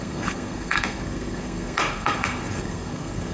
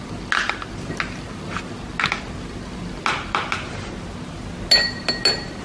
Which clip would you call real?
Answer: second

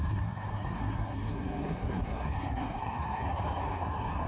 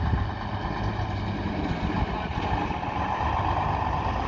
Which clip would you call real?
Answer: second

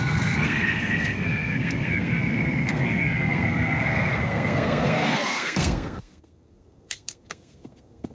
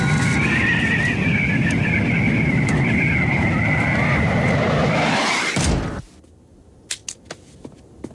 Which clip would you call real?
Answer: second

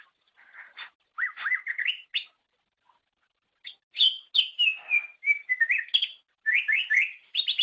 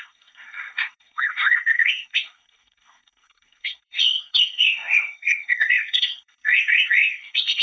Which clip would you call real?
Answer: first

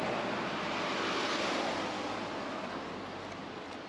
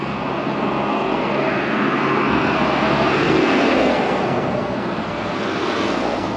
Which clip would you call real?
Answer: first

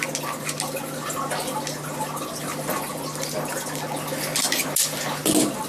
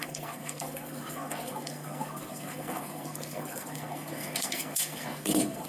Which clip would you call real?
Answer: first